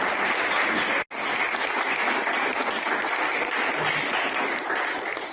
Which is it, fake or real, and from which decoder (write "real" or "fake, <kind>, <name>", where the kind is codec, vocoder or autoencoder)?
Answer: real